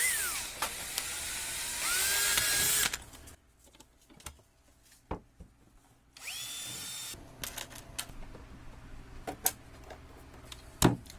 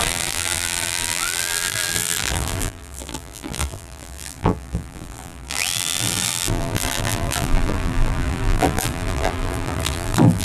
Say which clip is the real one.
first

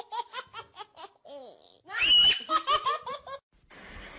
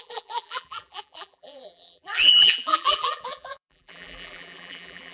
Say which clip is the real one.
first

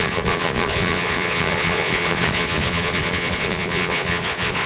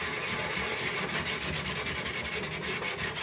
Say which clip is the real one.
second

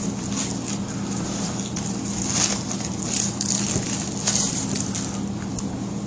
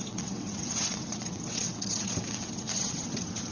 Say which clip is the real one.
first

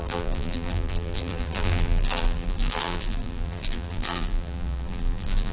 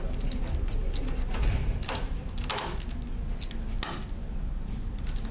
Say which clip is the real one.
second